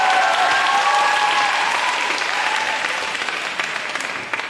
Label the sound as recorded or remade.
recorded